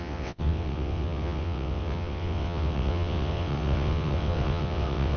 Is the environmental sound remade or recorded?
remade